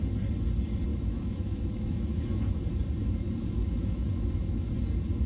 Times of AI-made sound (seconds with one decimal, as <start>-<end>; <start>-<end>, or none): 0.9-2.6; 3.0-4.7